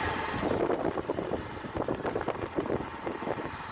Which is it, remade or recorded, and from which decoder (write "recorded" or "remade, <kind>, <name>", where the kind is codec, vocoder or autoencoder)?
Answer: recorded